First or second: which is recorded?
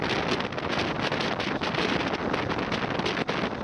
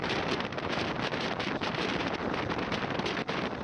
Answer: first